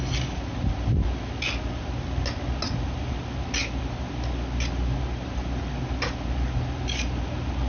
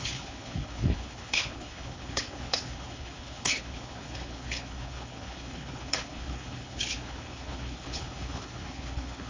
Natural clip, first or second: first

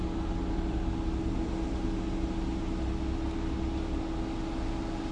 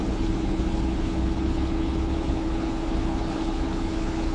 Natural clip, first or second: first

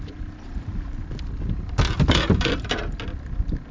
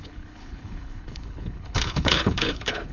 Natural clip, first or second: first